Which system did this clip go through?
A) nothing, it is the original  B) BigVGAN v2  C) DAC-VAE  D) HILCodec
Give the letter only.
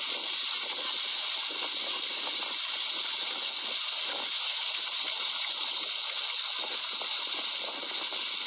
A